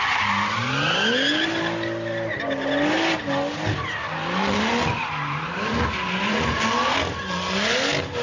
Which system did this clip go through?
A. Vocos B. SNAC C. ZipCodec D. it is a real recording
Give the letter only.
D